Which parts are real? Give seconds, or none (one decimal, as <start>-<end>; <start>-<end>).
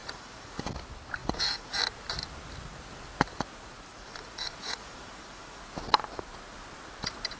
0.7-1.2; 1.8-3.9; 5.6-7.4